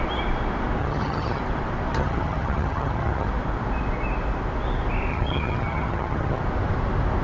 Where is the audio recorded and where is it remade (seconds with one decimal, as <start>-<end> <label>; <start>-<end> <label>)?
0.0-0.8 recorded; 0.8-1.4 remade; 1.4-1.9 recorded; 1.9-3.3 remade; 3.3-5.1 recorded; 5.1-6.4 remade; 6.4-7.2 recorded